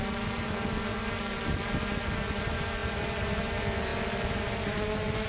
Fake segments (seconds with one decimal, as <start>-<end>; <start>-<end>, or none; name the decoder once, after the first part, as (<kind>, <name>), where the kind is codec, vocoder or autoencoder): 2.8-3.4 (vocoder, BigVGAN v2)